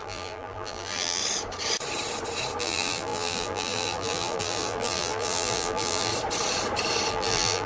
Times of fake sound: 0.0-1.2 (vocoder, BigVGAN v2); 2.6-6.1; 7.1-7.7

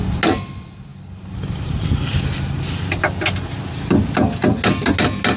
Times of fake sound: none

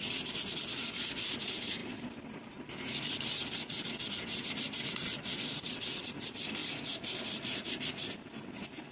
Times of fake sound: none

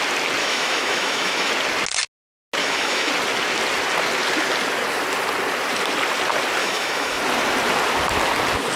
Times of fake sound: 0.4-1.5 (autoencoder, DAC-VAE); 2.6-3.1; 6.6-7.2

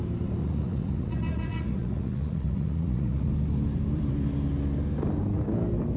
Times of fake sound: 0.4-3.3 (vocoder, Vocos)